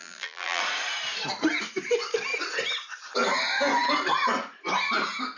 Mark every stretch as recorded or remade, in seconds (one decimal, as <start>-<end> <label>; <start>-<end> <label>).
0.0-0.6 remade; 0.6-5.4 recorded